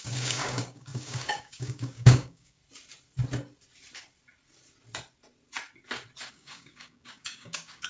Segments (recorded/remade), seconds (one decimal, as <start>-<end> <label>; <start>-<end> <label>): 0.0-2.6 remade; 2.6-6.3 recorded; 6.3-7.9 remade